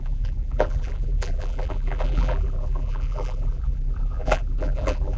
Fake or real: fake